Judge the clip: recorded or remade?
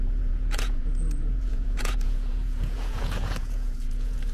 remade